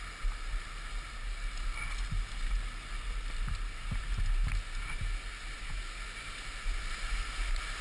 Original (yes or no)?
yes